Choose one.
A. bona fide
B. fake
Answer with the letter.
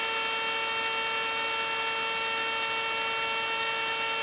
A